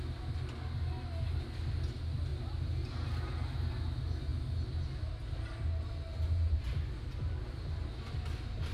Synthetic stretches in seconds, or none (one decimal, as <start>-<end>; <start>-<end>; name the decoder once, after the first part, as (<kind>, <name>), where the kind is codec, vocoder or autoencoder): none